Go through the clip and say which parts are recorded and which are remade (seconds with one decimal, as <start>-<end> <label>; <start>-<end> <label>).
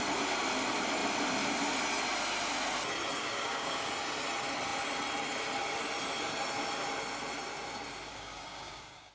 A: 0.0-3.2 recorded; 3.2-3.9 remade; 3.9-8.1 recorded; 8.1-9.1 remade